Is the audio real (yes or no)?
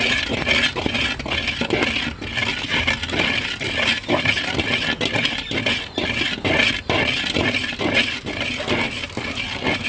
yes